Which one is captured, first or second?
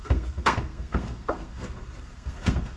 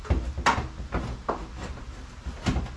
second